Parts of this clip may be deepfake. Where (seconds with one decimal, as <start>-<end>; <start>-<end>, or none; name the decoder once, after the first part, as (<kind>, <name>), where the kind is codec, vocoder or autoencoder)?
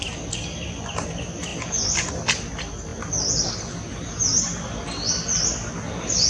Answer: 0.0-6.3 (vocoder, BigVGAN v2)